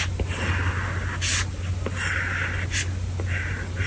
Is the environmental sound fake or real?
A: real